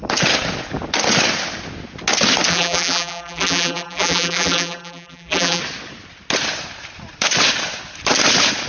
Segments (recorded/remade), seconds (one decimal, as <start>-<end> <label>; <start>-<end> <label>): 0.0-2.5 recorded; 2.5-5.6 remade; 5.6-8.7 recorded